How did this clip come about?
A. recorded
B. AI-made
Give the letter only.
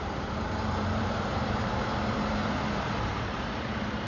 B